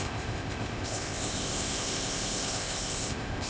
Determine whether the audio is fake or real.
fake